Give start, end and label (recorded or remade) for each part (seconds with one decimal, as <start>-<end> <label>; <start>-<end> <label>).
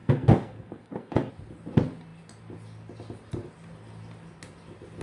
0.0-1.3 remade; 1.3-5.0 recorded